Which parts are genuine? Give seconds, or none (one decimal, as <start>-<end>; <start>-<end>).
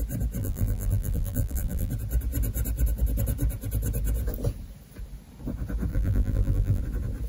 0.0-0.4; 1.9-5.9; 6.8-7.3